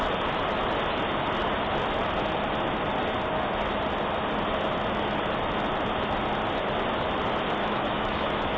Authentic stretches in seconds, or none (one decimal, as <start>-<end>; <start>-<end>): 0.0-7.6